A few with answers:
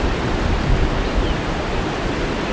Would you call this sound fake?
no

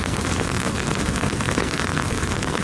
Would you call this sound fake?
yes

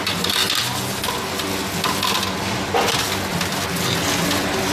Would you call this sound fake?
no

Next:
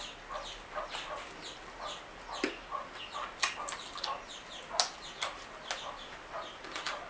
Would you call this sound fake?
no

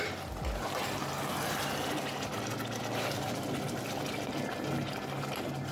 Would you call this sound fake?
no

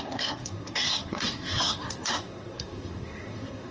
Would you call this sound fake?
yes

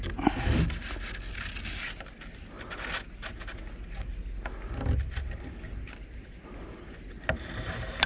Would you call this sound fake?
no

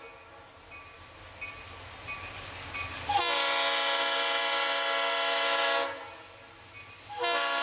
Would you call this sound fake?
no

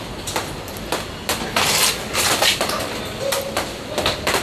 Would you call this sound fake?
no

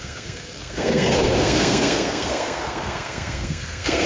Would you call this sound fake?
yes